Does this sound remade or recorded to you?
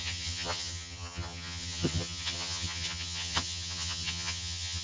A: remade